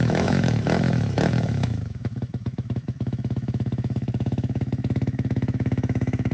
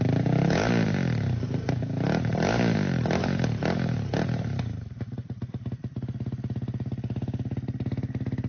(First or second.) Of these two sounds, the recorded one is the second